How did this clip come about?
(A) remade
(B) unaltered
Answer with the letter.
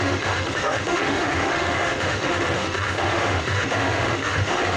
A